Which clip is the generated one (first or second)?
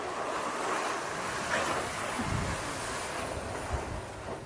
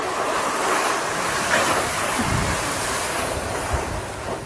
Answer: second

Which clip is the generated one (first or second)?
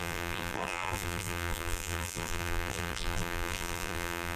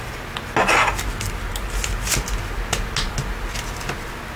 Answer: first